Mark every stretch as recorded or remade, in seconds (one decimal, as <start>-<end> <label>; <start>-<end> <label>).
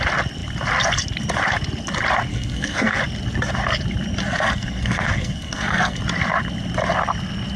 0.0-2.3 recorded; 2.3-3.0 remade; 3.0-4.2 recorded; 4.2-6.0 remade; 6.0-7.6 recorded